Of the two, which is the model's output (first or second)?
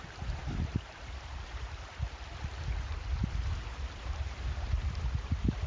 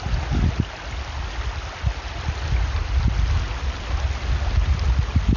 first